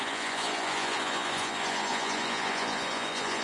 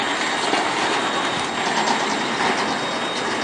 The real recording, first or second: second